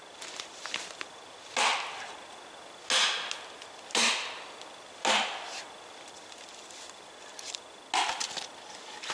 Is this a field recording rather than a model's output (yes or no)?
yes